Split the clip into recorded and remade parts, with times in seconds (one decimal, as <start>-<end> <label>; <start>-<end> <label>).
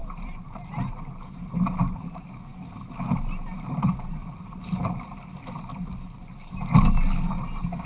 0.0-1.5 remade; 1.5-4.2 recorded; 4.2-5.3 remade; 5.3-7.9 recorded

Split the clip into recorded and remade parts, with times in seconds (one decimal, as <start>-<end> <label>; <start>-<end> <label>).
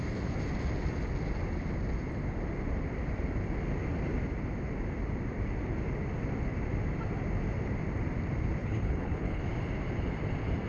0.0-8.6 recorded; 8.6-9.4 remade; 9.4-10.7 recorded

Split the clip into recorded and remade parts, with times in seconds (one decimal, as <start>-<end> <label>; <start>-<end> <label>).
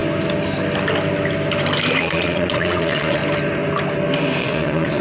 0.0-2.0 recorded; 2.0-3.2 remade; 3.2-4.4 recorded; 4.4-5.0 remade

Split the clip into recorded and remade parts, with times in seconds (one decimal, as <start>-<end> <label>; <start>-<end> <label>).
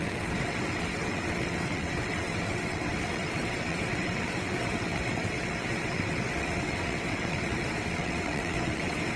0.0-9.2 remade